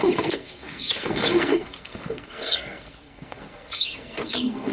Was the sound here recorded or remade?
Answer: remade